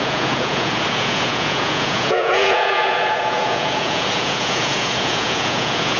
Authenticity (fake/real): fake